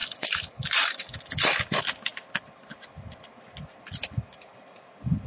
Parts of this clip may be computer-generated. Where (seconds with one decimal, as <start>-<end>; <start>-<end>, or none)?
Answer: 0.0-1.3; 2.1-2.7